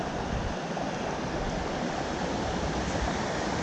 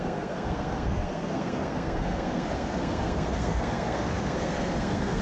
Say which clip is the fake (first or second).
second